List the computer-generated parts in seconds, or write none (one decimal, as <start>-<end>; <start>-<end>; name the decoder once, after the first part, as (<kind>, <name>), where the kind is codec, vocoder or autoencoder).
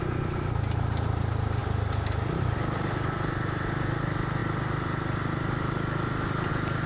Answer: none